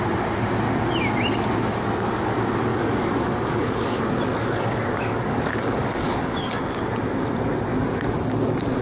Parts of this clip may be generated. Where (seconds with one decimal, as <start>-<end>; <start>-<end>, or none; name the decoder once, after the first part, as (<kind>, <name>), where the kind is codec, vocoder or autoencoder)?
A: 2.7-4.0 (codec, DAC); 4.4-6.5